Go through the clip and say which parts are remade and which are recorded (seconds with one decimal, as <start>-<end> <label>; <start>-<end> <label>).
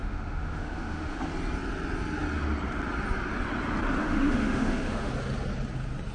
0.0-1.3 remade; 1.3-4.0 recorded; 4.0-5.1 remade; 5.1-6.1 recorded